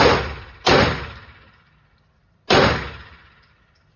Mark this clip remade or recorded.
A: recorded